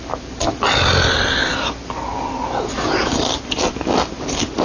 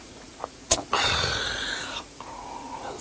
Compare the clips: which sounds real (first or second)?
first